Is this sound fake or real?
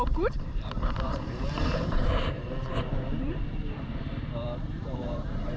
fake